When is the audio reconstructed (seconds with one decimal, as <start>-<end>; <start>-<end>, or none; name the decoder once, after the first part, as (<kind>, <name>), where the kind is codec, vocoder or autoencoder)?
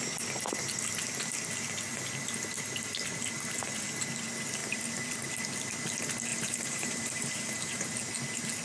6.3-8.0 (vocoder, BigVGAN v2)